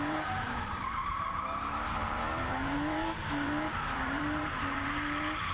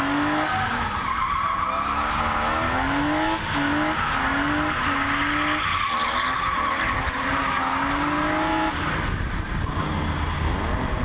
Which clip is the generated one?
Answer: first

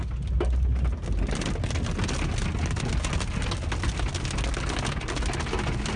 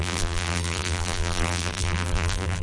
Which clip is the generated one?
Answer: second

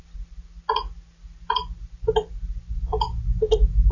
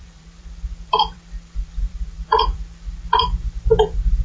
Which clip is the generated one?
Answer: second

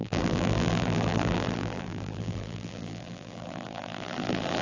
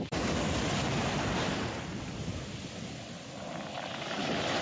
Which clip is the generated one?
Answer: first